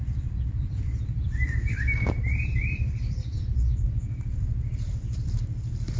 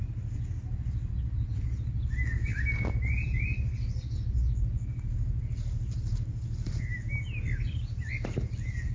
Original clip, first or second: second